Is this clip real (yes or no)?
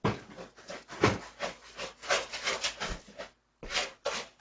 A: yes